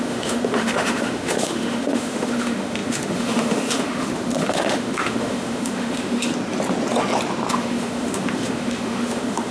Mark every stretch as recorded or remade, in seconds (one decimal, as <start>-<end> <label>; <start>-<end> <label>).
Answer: 0.0-6.3 remade; 6.3-7.5 recorded; 7.5-9.5 remade